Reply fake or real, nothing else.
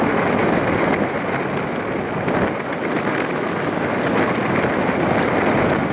real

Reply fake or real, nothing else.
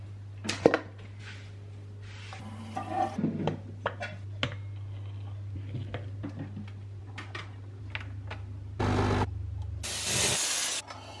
real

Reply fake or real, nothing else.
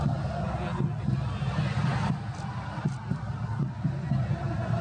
real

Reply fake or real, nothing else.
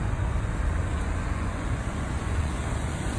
fake